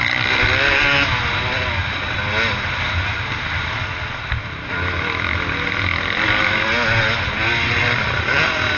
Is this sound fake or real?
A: real